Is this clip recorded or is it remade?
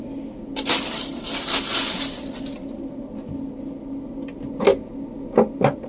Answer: recorded